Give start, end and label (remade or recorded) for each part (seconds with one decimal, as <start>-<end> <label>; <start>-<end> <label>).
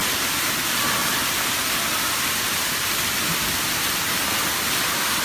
0.0-5.2 recorded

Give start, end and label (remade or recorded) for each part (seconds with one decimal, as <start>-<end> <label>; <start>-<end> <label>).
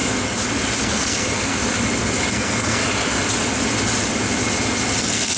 0.0-0.8 recorded; 0.8-1.6 remade; 1.6-2.3 recorded; 2.3-2.8 remade; 2.8-5.0 recorded; 5.0-5.4 remade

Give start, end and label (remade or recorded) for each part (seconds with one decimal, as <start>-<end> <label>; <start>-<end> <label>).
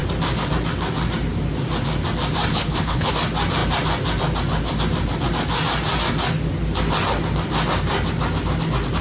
0.0-2.5 recorded; 2.5-3.1 remade; 3.1-9.0 recorded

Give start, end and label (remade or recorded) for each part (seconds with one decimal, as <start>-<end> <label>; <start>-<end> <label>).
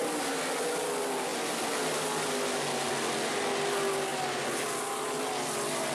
0.0-5.9 recorded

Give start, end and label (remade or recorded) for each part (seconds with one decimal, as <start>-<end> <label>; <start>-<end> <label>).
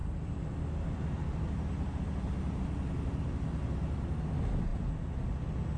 0.0-5.8 recorded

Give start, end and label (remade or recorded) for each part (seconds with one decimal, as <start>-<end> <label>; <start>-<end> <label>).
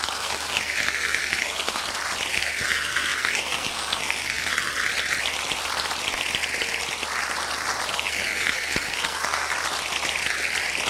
0.0-1.8 remade; 1.8-2.3 recorded; 2.3-4.7 remade; 4.7-7.9 recorded; 7.9-9.5 remade; 9.5-10.9 recorded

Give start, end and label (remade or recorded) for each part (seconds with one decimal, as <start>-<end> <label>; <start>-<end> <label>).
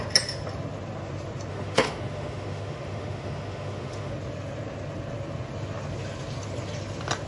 0.0-1.5 recorded; 1.5-4.1 remade; 4.1-7.3 recorded